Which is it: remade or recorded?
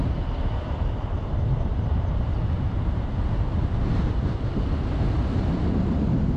remade